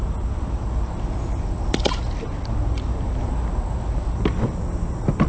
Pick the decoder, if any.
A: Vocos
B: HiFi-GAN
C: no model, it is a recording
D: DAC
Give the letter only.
C